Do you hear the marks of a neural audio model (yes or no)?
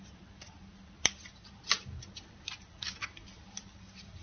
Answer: yes